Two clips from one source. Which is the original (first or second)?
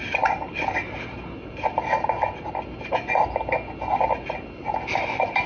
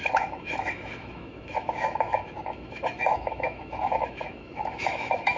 first